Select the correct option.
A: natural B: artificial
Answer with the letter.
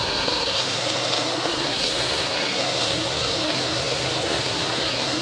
B